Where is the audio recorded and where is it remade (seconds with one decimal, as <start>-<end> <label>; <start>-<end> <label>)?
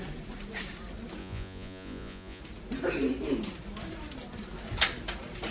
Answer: 0.0-1.2 recorded; 1.2-2.4 remade; 2.4-5.5 recorded